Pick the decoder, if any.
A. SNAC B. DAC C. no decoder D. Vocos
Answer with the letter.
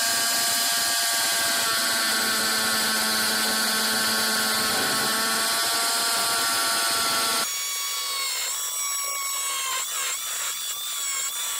C